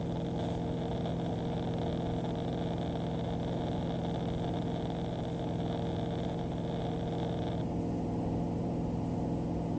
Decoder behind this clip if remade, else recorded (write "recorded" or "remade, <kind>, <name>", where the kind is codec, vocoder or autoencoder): recorded